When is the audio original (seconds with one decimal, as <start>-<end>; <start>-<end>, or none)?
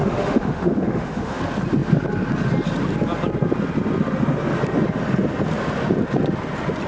1.4-6.9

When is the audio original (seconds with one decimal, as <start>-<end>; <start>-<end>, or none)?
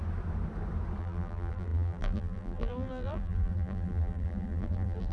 0.0-1.0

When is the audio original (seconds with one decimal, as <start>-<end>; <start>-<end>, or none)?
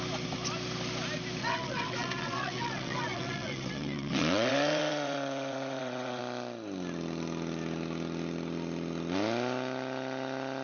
0.0-1.4; 6.2-10.6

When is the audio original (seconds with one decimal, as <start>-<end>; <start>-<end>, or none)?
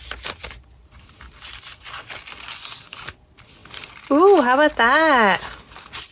0.0-6.1